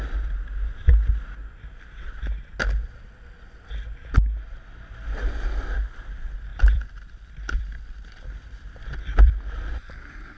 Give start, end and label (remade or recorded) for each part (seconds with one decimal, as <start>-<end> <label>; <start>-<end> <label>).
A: 0.0-6.5 recorded; 6.5-9.3 remade; 9.3-10.4 recorded